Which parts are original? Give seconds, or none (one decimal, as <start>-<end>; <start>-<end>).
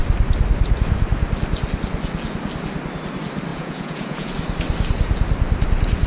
0.0-3.5; 4.3-6.1